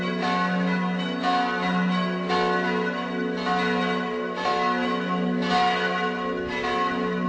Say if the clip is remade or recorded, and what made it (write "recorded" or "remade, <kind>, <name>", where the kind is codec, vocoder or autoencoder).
recorded